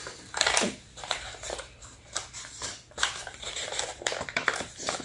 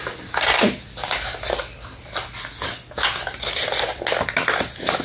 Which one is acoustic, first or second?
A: second